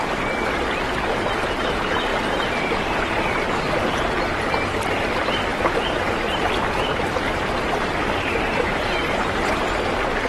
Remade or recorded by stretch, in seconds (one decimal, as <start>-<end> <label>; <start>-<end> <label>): 0.0-5.5 recorded; 5.5-6.5 remade; 6.5-6.9 recorded; 6.9-9.6 remade; 9.6-10.3 recorded